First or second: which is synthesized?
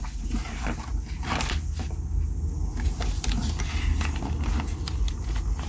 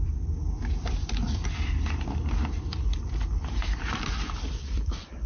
second